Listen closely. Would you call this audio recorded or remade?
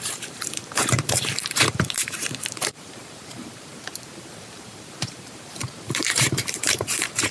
remade